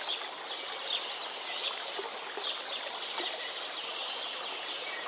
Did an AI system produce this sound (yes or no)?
no